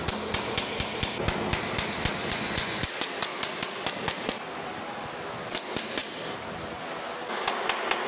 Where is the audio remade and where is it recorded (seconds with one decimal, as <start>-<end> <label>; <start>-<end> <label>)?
0.0-2.2 recorded; 2.2-2.9 remade; 2.9-8.1 recorded